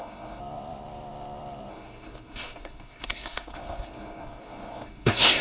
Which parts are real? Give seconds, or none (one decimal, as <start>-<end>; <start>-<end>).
0.4-1.7